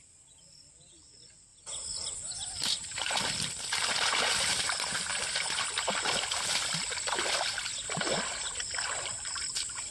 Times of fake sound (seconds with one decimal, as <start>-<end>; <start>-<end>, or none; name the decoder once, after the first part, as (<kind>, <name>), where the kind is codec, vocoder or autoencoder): 0.0-7.6 (vocoder, BigVGAN v2); 8.6-9.9